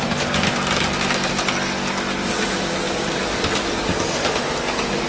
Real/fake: real